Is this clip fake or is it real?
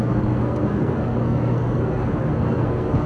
fake